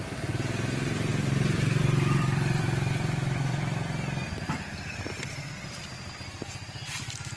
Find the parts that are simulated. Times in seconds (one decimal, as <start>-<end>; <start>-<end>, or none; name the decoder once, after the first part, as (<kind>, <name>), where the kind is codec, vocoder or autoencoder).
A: 1.1-5.5 (vocoder, BigVGAN v2)